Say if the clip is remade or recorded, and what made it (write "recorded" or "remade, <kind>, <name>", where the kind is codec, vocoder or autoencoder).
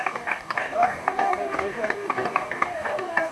remade, codec, DAC